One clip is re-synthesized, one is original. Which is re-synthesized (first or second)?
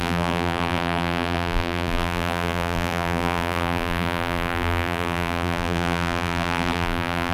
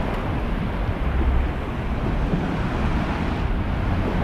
first